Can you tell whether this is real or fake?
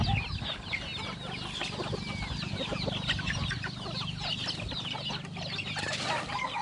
real